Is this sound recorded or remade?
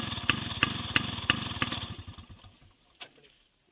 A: recorded